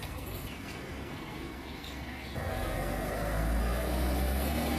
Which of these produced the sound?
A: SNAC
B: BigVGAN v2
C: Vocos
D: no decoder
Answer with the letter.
A